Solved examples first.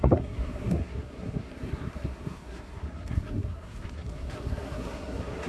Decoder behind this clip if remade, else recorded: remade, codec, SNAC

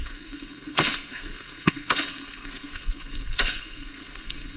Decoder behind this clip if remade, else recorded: remade, codec, SNAC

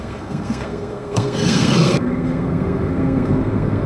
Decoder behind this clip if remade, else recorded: remade, codec, SNAC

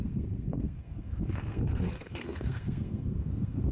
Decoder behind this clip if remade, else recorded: remade, codec, SNAC